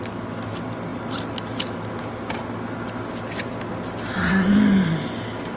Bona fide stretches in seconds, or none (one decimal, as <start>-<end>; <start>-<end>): 0.0-5.6